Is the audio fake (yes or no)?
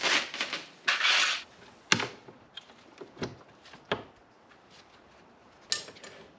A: no